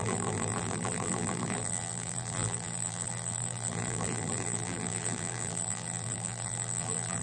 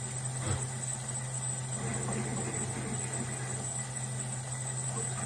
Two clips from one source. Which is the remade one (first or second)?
first